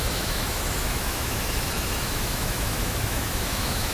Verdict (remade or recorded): remade